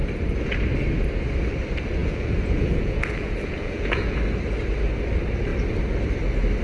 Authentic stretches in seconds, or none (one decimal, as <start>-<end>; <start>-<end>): 0.0-2.0; 4.2-6.6